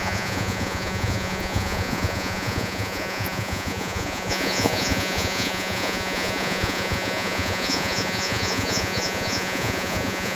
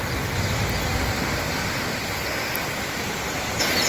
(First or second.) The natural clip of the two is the second